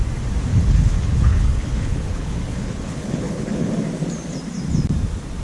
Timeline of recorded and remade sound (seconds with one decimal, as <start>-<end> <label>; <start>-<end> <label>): 0.0-0.5 recorded; 0.5-3.7 remade; 3.7-5.4 recorded